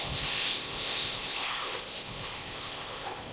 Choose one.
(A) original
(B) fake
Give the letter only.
B